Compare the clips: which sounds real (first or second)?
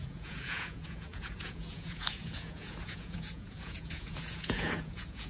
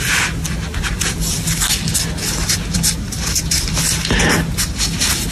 second